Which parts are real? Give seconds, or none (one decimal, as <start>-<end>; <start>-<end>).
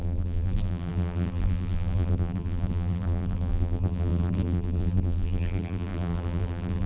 none